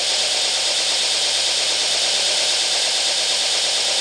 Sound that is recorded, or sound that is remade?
recorded